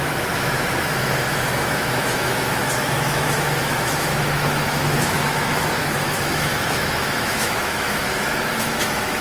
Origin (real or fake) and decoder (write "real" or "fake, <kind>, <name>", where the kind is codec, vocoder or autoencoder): fake, autoencoder, DAC-VAE